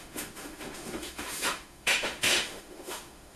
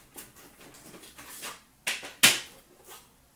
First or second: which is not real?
first